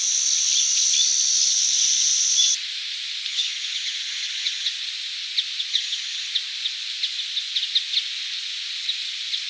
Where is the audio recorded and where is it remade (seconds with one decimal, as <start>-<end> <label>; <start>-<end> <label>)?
0.0-3.3 recorded; 3.3-4.7 remade; 4.7-5.7 recorded; 5.7-6.3 remade; 6.3-9.5 recorded